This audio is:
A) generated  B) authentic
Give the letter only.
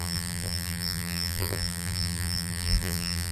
A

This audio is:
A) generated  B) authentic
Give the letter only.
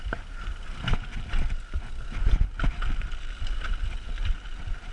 B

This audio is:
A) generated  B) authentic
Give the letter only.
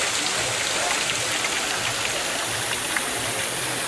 B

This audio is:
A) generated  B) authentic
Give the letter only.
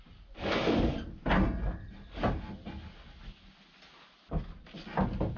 B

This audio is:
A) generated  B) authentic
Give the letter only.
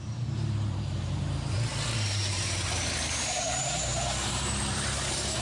A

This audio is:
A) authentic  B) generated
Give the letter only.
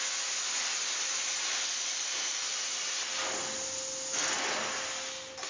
A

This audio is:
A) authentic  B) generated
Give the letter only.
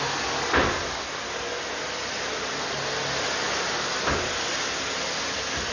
A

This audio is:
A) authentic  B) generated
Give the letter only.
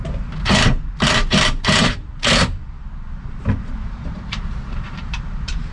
B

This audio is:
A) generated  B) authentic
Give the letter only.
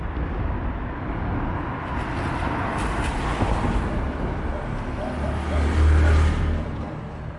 B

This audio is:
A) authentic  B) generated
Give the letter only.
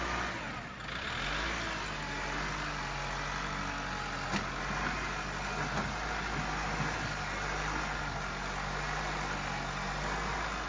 A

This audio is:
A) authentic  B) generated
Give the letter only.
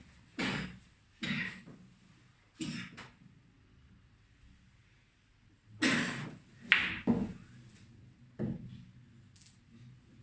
A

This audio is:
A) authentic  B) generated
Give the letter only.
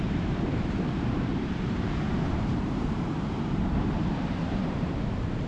B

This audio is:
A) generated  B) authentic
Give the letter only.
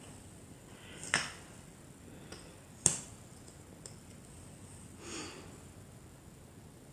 B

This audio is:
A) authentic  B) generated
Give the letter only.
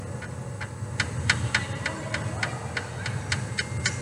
A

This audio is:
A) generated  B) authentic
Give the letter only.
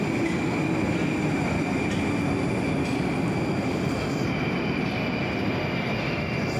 B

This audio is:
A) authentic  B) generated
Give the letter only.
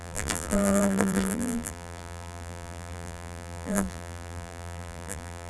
B